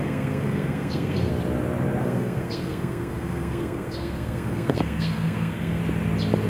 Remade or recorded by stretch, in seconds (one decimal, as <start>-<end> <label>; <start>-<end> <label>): 0.0-1.3 remade; 1.3-2.0 recorded; 2.0-5.8 remade; 5.8-6.5 recorded